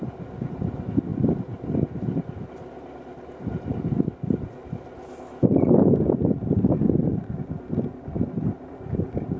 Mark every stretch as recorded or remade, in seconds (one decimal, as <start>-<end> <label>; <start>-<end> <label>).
0.0-9.4 recorded